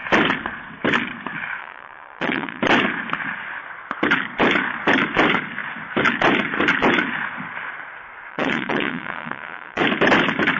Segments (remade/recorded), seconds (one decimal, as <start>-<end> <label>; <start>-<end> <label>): 0.0-1.6 recorded; 1.6-2.6 remade; 2.6-8.3 recorded; 8.3-9.8 remade; 9.8-10.6 recorded